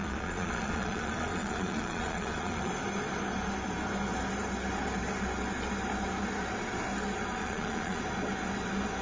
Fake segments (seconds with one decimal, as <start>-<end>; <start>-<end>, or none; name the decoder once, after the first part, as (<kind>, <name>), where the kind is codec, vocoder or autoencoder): 0.0-2.7 (vocoder, Vocos); 7.4-8.0